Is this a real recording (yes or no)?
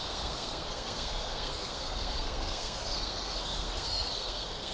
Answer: no